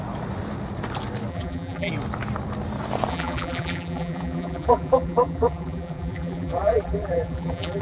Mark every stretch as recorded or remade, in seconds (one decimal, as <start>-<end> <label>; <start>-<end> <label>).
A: 0.0-1.3 recorded; 1.3-1.9 remade; 1.9-3.1 recorded; 3.1-7.8 remade